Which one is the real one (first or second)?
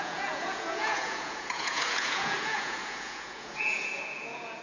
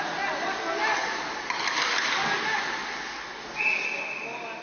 second